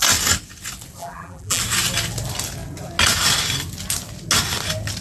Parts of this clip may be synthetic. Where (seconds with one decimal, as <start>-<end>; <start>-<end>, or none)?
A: 1.0-1.6